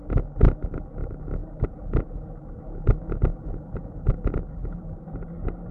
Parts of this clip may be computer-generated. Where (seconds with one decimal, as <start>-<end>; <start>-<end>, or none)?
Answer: 1.4-2.8; 3.3-4.1; 4.6-5.7